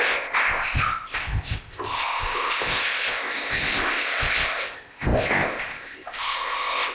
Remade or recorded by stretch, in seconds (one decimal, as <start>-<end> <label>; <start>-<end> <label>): 0.0-6.9 remade